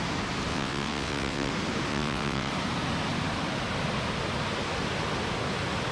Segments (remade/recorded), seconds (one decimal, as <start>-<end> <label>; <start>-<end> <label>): 0.0-0.5 recorded; 0.5-1.5 remade; 1.5-1.9 recorded; 1.9-2.5 remade; 2.5-5.9 recorded